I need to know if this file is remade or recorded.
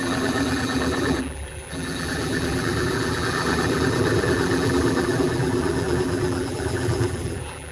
remade